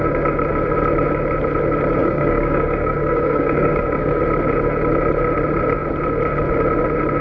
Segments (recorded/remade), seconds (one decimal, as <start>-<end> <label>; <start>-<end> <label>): 0.0-2.0 recorded; 2.0-4.2 remade; 4.2-7.2 recorded